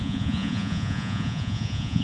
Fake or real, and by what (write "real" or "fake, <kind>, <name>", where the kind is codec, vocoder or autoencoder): fake, vocoder, Vocos